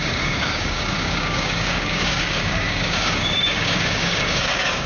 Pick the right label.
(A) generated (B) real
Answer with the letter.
A